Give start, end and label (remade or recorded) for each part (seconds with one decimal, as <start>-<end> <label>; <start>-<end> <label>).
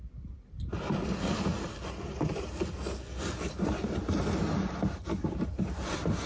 0.0-6.3 recorded